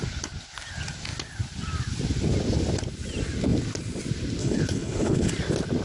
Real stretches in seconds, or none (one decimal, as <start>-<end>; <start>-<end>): 0.0-4.4; 5.3-5.8